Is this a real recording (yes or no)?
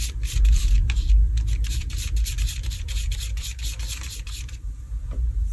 no